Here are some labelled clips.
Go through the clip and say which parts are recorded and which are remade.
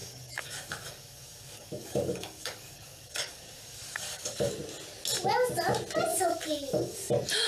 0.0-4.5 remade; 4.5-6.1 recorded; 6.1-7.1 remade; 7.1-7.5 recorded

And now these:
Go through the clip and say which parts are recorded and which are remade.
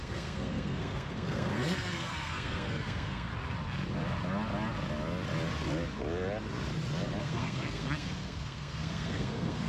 0.0-3.3 remade; 3.3-7.2 recorded; 7.2-9.7 remade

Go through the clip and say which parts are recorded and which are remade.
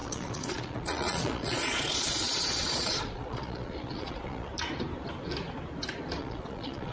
0.0-4.5 remade; 4.5-6.2 recorded; 6.2-6.9 remade